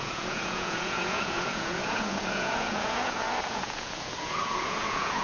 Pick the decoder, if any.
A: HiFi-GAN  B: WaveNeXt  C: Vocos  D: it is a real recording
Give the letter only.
C